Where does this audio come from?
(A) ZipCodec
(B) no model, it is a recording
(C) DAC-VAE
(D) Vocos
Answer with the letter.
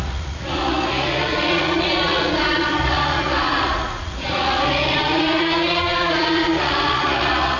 D